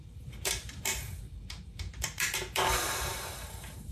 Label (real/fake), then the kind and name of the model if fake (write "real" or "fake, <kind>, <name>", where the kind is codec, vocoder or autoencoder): fake, vocoder, BigVGAN v2